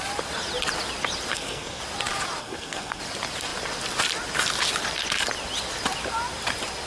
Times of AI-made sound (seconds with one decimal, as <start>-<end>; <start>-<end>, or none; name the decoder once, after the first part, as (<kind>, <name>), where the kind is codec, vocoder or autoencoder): 1.3-1.8 (codec, SNAC); 2.4-3.0

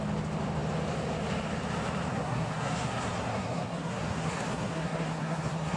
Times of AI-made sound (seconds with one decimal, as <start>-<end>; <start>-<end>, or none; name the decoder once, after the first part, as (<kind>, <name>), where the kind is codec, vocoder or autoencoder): 2.1-5.8 (codec, SNAC)